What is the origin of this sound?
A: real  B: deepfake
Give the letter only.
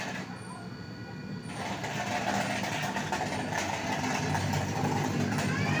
A